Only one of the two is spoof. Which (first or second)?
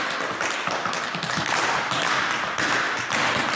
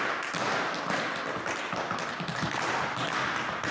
first